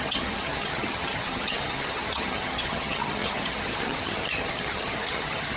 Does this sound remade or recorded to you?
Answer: remade